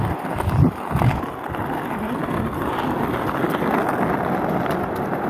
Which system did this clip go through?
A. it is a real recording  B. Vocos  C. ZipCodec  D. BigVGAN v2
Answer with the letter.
A